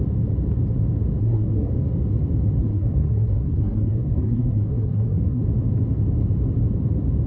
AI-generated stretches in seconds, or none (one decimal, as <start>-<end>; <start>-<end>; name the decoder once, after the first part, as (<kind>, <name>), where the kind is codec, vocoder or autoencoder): 1.2-1.7 (codec, SNAC); 2.6-5.4